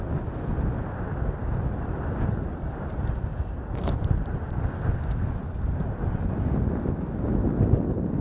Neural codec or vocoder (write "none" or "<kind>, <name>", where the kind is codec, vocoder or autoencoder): none